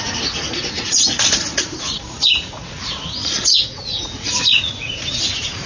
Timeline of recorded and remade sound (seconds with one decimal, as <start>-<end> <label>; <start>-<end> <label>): 0.0-5.7 remade